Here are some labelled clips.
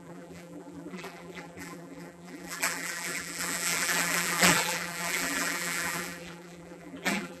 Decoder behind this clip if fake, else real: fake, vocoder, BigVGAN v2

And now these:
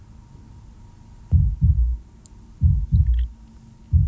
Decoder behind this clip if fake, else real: real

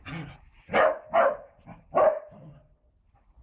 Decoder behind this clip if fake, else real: real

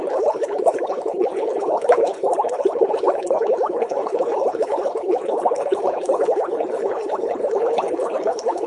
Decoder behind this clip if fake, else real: fake, codec, HILCodec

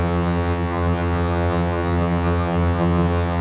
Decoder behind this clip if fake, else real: fake, vocoder, HiFi-GAN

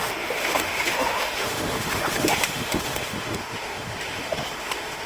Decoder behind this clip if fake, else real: fake, autoencoder, DAC-VAE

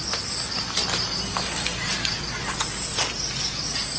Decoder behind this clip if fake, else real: real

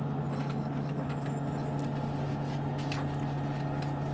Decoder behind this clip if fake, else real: real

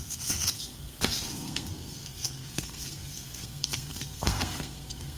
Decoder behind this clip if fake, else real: fake, codec, SNAC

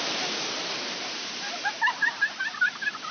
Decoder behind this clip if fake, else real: fake, vocoder, BigVGAN v2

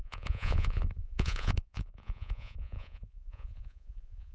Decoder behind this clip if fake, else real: fake, vocoder, Vocos